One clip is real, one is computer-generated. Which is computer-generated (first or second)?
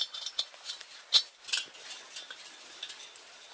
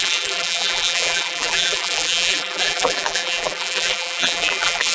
second